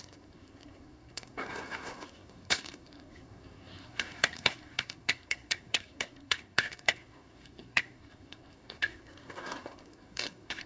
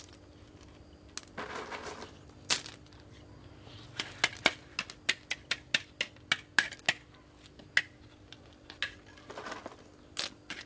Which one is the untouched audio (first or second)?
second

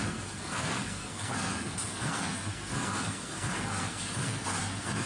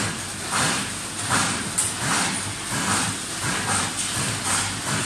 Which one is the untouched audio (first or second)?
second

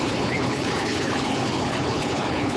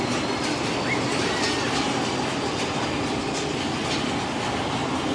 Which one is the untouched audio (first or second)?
second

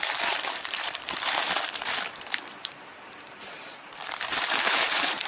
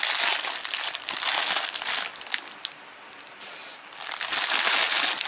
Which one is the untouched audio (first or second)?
second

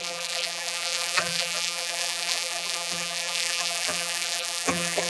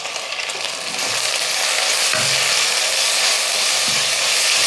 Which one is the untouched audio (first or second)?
second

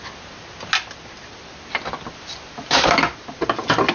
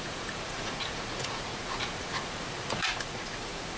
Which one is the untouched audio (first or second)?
first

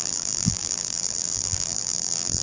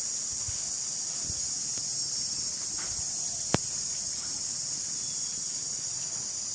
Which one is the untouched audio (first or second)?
second